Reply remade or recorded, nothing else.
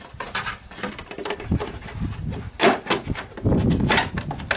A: recorded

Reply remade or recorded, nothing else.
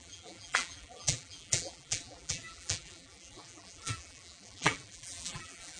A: remade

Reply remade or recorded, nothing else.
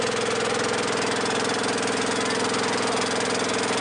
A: recorded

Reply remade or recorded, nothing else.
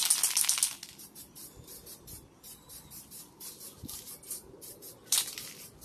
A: recorded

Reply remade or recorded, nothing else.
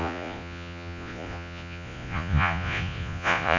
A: remade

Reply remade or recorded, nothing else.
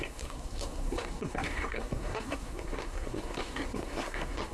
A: remade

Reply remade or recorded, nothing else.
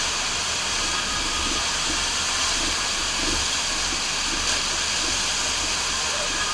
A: recorded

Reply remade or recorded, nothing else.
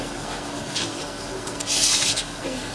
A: remade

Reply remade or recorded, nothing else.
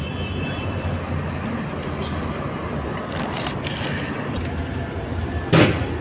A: recorded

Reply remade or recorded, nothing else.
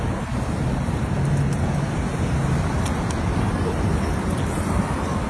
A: recorded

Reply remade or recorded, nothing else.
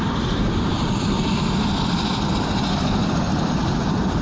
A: remade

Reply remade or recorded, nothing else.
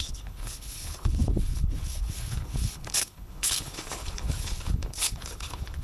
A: remade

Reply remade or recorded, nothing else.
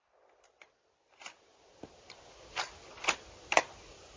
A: recorded